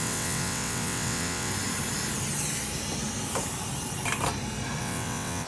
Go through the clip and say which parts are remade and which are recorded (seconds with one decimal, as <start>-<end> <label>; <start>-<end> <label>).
0.0-1.5 remade; 1.5-4.8 recorded; 4.8-5.5 remade